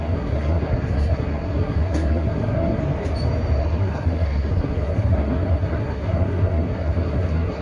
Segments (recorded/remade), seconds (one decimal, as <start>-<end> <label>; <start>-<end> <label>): 0.0-2.8 remade; 2.8-3.6 recorded; 3.6-7.6 remade